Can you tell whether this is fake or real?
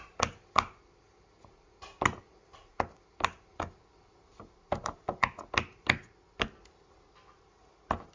real